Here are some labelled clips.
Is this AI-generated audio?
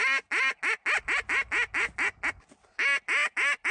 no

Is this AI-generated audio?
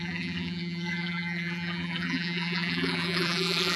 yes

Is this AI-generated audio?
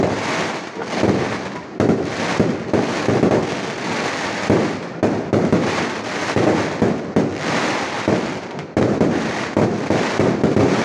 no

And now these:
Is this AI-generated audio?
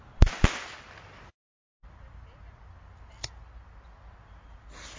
no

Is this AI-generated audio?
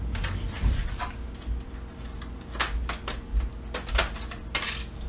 no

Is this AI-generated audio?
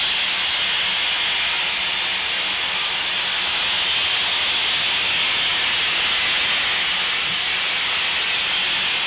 no